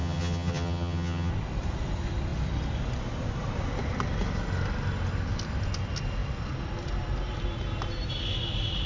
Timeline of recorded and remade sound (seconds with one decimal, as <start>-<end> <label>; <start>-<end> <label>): 0.0-1.3 remade; 1.3-8.9 recorded